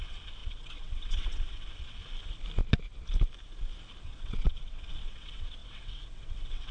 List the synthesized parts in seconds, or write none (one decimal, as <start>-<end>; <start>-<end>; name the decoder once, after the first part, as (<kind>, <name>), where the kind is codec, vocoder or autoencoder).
0.0-2.0 (vocoder, WaveNeXt); 4.0-6.7